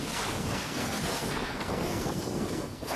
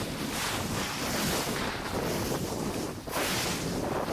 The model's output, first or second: first